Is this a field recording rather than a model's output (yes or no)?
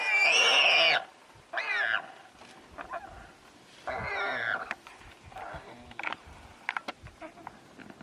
yes